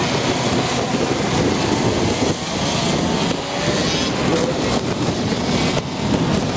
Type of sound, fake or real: real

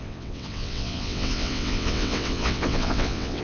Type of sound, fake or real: fake